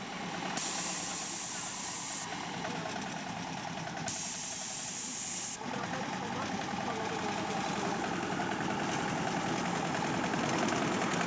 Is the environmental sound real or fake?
real